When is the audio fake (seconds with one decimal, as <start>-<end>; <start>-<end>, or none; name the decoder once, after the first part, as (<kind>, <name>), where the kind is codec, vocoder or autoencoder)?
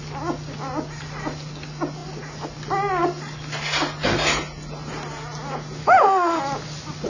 5.8-6.4 (autoencoder, DAC-VAE)